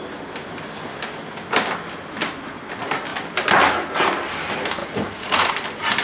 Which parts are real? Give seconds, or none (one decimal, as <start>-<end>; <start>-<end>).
0.0-4.8; 5.5-6.0